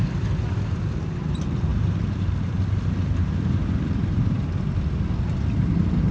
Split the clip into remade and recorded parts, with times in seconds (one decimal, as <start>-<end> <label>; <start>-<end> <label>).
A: 0.0-1.7 recorded; 1.7-2.6 remade; 2.6-3.2 recorded; 3.2-4.4 remade; 4.4-6.1 recorded